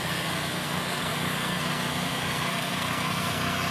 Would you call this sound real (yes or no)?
no